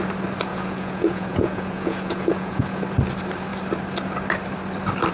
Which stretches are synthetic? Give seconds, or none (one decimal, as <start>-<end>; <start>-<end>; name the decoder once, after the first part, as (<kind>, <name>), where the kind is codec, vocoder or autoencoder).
0.5-2.8 (vocoder, Vocos)